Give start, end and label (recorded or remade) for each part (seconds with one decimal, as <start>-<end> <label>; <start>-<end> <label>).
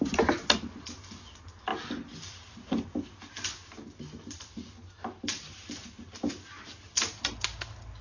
0.0-1.7 recorded; 1.7-3.2 remade; 3.2-3.6 recorded; 3.6-4.7 remade; 4.7-5.8 recorded; 5.8-6.3 remade; 6.3-8.0 recorded